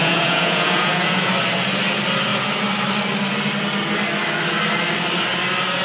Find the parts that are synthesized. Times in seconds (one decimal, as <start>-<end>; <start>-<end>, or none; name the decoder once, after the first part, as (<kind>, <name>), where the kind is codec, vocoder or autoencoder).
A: 0.0-1.3 (vocoder, Vocos)